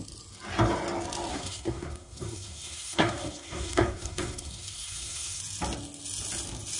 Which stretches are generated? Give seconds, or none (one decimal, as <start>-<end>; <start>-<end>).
1.3-5.4